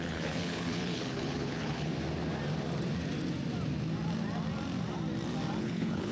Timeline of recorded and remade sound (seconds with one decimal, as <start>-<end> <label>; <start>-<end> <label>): 0.0-1.9 remade; 1.9-5.6 recorded; 5.6-6.1 remade